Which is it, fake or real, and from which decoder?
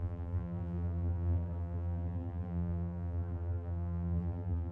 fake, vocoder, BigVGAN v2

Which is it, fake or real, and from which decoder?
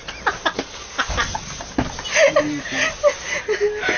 real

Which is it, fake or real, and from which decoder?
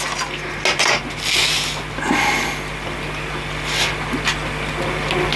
real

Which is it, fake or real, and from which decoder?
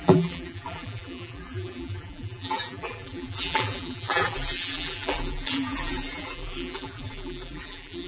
fake, vocoder, BigVGAN v2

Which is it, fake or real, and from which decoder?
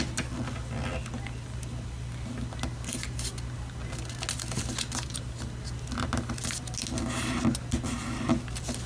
real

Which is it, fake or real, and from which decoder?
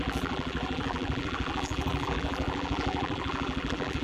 fake, vocoder, BigVGAN v2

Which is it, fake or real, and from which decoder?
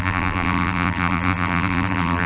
fake, vocoder, BigVGAN v2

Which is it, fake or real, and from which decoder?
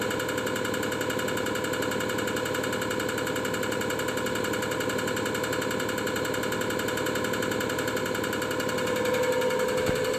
real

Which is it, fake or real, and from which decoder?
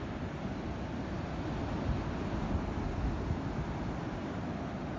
real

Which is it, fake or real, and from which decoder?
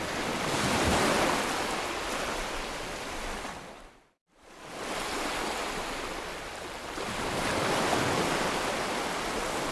fake, vocoder, BigVGAN v2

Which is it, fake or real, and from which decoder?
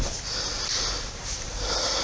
real